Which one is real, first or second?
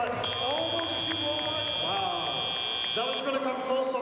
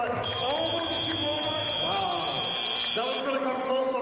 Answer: first